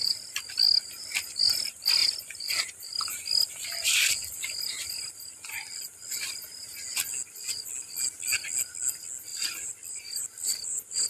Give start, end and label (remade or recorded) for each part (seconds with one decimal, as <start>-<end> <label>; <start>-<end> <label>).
0.0-0.5 remade; 0.5-2.0 recorded; 2.0-4.9 remade; 4.9-9.3 recorded; 9.3-11.1 remade